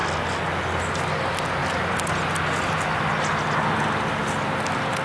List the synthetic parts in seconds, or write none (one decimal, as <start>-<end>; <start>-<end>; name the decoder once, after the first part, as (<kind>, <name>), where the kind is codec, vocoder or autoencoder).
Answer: none